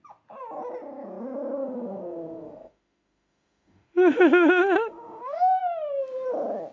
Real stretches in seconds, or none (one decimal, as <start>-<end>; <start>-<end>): 0.0-1.6; 5.6-6.7